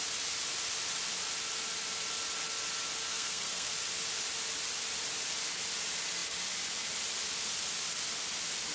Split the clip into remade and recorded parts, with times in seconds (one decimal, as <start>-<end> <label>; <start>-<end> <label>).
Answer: 0.0-3.1 recorded; 3.1-3.7 remade; 3.7-8.7 recorded